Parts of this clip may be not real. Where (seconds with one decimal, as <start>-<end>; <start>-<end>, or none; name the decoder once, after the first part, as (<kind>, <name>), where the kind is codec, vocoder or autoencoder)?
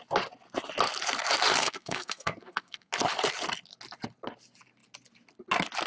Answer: 1.6-2.9 (codec, SNAC)